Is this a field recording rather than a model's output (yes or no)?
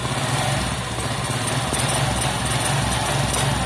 yes